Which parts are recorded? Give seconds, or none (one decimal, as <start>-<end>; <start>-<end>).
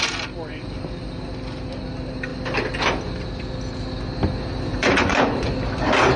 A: 0.0-4.7; 5.5-6.2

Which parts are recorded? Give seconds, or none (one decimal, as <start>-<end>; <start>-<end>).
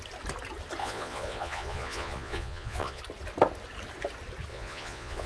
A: 0.0-0.8; 3.0-4.5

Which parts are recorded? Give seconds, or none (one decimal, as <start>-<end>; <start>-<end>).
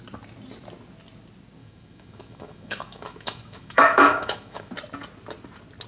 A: 0.0-1.6; 4.7-5.9